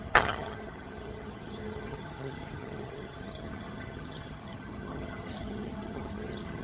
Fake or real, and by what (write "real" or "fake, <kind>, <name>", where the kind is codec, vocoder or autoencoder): fake, vocoder, HiFi-GAN